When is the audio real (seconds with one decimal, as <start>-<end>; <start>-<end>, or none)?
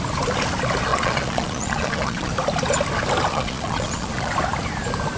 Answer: 0.0-0.9; 2.3-3.3; 4.3-5.2